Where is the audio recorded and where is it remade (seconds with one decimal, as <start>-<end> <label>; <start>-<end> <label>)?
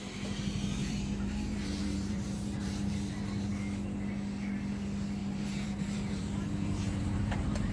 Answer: 0.0-0.8 recorded; 0.8-3.5 remade; 3.5-5.2 recorded; 5.2-7.7 remade